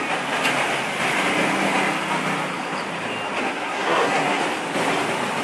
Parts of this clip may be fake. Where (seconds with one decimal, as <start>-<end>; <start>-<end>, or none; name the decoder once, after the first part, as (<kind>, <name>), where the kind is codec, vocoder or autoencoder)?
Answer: 3.4-4.4 (codec, SNAC)